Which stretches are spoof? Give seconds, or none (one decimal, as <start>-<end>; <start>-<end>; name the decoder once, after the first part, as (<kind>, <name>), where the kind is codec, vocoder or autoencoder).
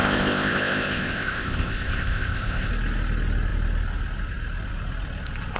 0.0-2.7 (codec, ZipCodec)